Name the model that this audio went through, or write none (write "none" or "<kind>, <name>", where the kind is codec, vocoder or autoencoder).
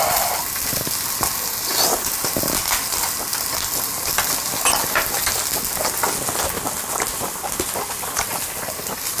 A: none